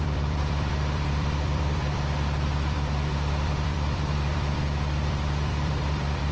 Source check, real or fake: fake